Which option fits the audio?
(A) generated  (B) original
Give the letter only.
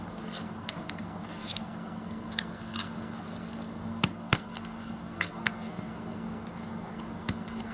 A